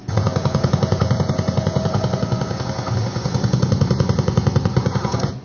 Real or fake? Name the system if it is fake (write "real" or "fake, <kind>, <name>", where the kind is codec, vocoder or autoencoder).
fake, vocoder, Vocos